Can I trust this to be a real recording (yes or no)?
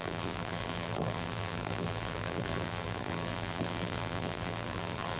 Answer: no